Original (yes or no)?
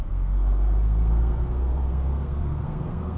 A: no